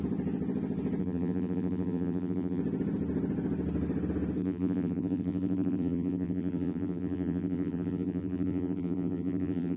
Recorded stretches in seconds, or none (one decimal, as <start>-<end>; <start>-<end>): 0.0-1.0; 2.6-4.4